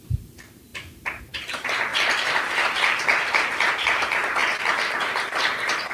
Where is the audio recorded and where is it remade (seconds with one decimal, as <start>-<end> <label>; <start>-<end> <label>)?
0.0-0.7 remade; 0.7-1.2 recorded; 1.2-4.4 remade; 4.4-5.0 recorded; 5.0-5.9 remade